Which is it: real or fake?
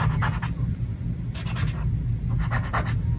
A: real